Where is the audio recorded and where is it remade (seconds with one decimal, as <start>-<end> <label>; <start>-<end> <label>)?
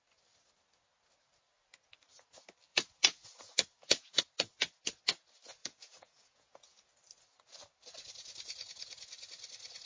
0.0-2.7 recorded; 2.7-4.2 remade; 4.2-5.6 recorded; 5.6-6.9 remade; 6.9-9.9 recorded